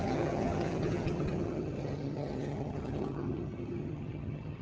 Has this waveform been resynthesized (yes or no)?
yes